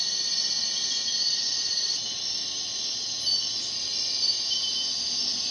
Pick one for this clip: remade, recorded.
recorded